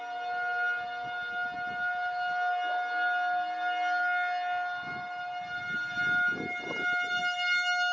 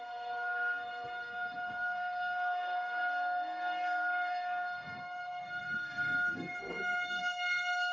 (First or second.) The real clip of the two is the first